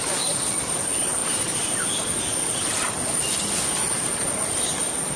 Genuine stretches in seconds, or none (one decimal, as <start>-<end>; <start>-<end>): 0.0-5.2